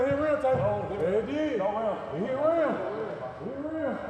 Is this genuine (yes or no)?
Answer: yes